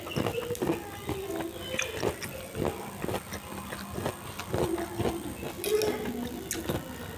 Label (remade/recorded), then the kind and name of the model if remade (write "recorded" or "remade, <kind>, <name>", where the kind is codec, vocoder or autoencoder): recorded